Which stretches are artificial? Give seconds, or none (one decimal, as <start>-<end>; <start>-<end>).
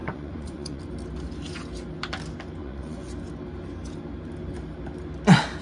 0.0-0.8; 2.6-3.1